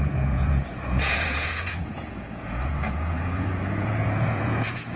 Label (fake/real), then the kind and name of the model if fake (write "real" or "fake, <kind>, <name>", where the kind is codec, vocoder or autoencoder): fake, vocoder, Vocos